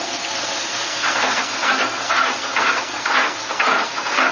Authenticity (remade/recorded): remade